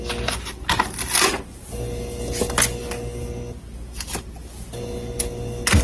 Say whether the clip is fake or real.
real